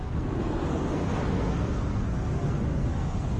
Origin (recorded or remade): remade